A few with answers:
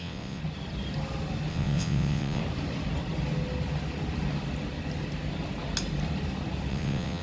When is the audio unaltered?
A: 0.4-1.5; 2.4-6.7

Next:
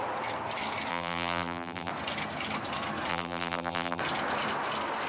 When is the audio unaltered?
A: 0.0-0.9; 1.9-3.1; 4.0-5.1

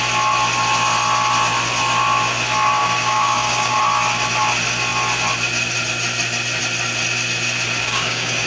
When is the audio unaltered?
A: 0.0-2.8; 3.8-7.8

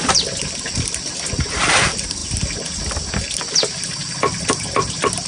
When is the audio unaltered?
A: 0.0-5.3

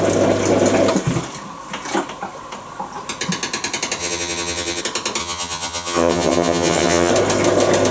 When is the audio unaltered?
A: 0.0-4.0; 4.8-5.2; 7.1-7.9

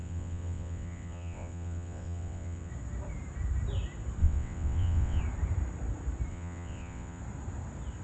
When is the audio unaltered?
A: 2.7-4.2; 5.2-6.3; 7.2-8.0

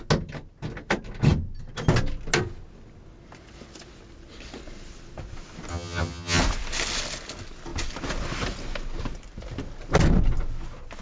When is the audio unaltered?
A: 0.0-5.7; 6.4-11.0